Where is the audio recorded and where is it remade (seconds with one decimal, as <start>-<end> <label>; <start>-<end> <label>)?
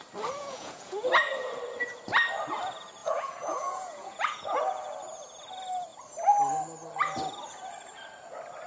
0.0-0.4 recorded; 0.4-1.1 remade; 1.1-3.0 recorded; 3.0-4.6 remade; 4.6-8.7 recorded